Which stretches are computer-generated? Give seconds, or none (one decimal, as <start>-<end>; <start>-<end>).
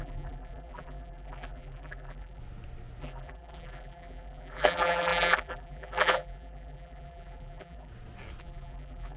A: 0.0-2.4; 3.0-7.9; 8.4-9.2